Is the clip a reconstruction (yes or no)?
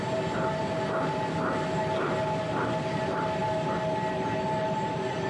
no